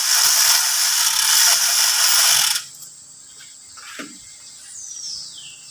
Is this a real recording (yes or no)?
yes